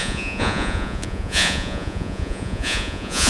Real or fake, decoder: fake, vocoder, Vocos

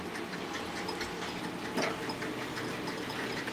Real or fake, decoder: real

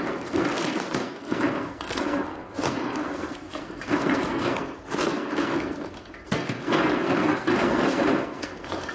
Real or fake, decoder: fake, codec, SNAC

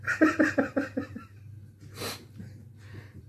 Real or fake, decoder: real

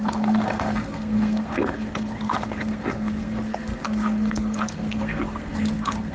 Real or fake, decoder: fake, codec, SNAC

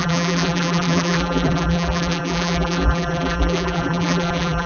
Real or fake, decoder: fake, vocoder, BigVGAN v2